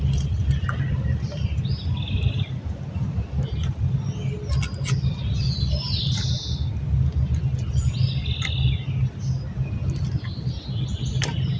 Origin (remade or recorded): recorded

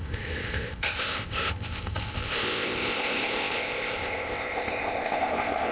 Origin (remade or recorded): remade